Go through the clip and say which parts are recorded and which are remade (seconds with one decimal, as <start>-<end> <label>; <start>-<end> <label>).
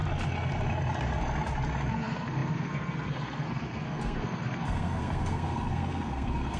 0.0-1.9 recorded; 1.9-6.6 remade